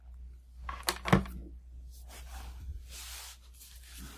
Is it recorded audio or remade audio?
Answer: recorded